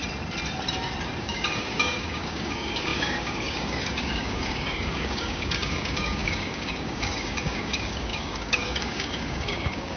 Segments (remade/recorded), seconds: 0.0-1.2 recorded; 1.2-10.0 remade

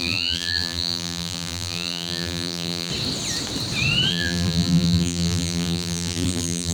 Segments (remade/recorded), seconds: 0.0-2.9 remade; 2.9-4.1 recorded; 4.1-6.7 remade

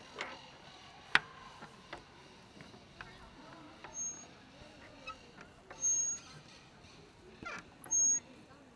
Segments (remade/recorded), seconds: 0.0-8.8 recorded